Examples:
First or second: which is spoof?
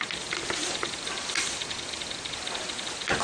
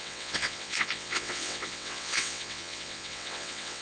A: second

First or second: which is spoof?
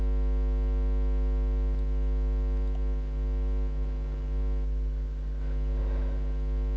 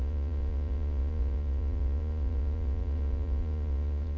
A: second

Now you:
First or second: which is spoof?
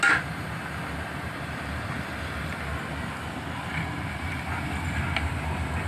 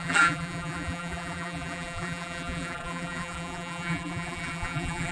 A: second